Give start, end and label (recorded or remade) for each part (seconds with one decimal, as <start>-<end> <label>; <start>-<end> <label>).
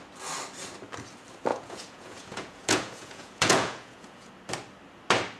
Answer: 0.0-1.5 recorded; 1.5-4.3 remade; 4.3-5.4 recorded